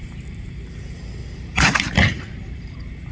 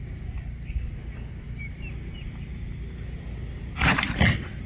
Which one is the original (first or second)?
second